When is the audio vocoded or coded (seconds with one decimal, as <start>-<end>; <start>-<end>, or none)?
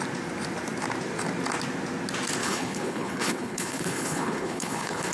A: 2.4-5.1